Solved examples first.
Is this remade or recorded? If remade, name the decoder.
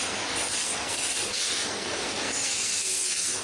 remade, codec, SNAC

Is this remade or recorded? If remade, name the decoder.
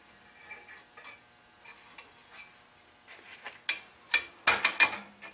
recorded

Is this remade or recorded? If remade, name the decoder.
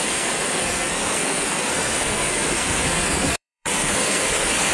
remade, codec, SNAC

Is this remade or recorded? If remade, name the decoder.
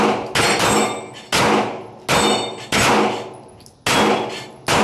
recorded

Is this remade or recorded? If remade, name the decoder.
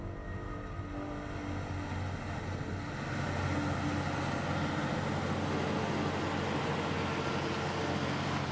recorded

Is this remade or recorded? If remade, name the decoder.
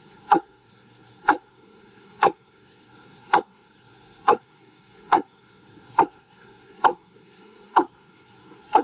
remade, codec, SNAC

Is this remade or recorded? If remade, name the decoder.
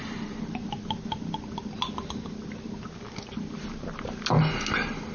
recorded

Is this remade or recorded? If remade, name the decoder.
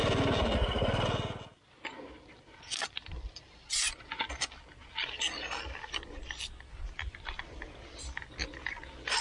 recorded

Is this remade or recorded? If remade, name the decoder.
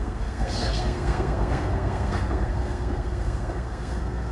remade, codec, SNAC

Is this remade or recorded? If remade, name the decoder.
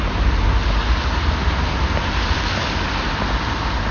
recorded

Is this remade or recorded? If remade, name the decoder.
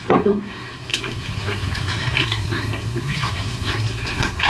remade, codec, SNAC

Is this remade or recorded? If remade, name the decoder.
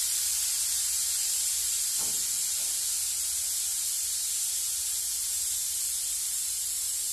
recorded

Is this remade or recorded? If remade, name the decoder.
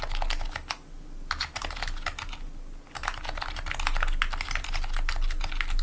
recorded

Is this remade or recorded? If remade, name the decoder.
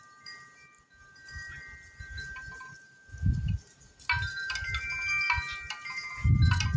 recorded